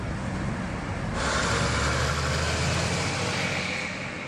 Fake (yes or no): no